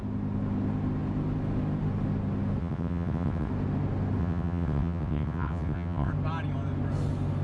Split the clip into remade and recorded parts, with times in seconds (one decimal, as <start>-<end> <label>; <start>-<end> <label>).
0.0-2.6 recorded; 2.6-3.5 remade; 3.5-4.2 recorded; 4.2-6.1 remade; 6.1-7.4 recorded